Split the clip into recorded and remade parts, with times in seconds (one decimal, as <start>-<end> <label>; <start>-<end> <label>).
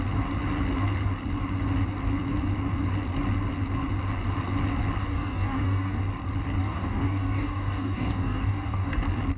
0.0-5.0 recorded; 5.0-6.0 remade; 6.0-6.6 recorded; 6.6-9.0 remade; 9.0-9.4 recorded